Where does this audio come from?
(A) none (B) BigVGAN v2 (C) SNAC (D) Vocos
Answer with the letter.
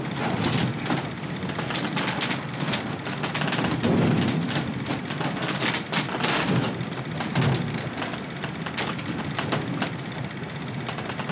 A